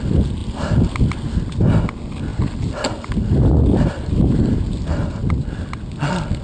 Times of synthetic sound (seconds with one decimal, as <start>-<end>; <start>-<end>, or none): 0.4-1.0; 2.3-4.6